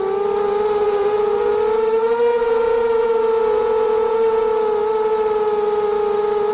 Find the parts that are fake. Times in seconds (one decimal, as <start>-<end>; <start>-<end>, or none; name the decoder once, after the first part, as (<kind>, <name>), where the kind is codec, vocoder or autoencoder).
0.8-1.5 (vocoder, Vocos); 2.3-4.4